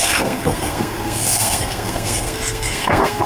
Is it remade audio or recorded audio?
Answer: remade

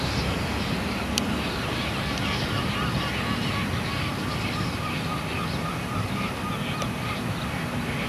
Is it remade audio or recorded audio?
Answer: recorded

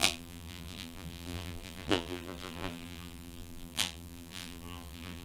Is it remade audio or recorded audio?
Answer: remade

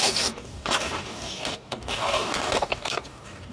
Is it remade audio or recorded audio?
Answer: remade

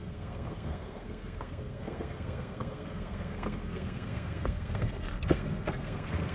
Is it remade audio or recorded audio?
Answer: remade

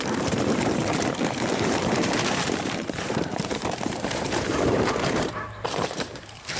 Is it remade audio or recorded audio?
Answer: remade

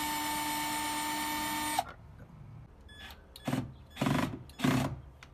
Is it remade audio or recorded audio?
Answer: recorded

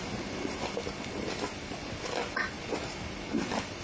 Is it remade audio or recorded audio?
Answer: recorded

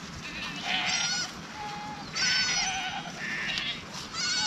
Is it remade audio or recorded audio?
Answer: recorded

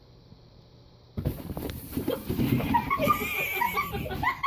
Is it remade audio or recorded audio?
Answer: remade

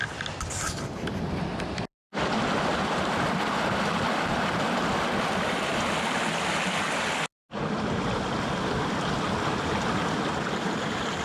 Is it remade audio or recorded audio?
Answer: recorded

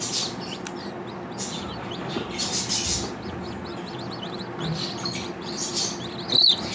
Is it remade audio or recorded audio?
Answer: recorded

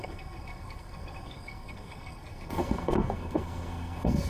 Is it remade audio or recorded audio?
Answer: remade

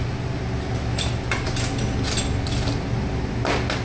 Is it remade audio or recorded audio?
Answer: recorded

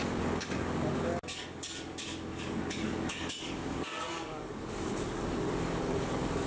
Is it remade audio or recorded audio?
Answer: remade